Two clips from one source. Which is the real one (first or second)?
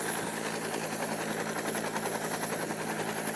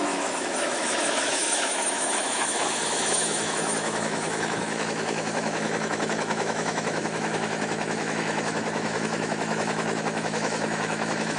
first